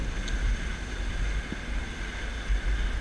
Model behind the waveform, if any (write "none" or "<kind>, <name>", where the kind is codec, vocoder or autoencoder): none